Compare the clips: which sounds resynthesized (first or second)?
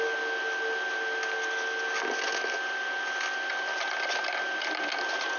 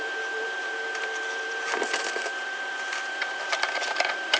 second